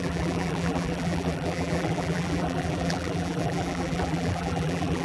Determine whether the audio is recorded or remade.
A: remade